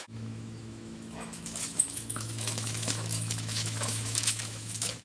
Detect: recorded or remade remade